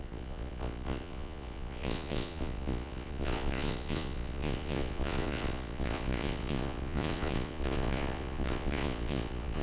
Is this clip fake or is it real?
fake